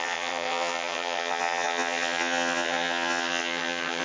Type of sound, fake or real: fake